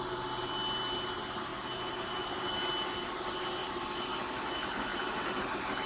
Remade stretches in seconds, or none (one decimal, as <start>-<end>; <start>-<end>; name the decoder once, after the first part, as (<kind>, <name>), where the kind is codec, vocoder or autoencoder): 3.6-4.2 (vocoder, BigVGAN v2); 4.9-5.9